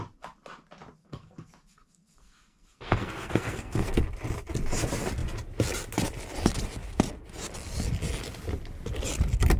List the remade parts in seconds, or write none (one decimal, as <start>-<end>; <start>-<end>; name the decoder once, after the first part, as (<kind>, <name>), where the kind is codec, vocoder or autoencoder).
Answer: 1.0-4.0 (codec, SNAC)